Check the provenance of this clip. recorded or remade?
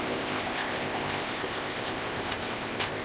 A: remade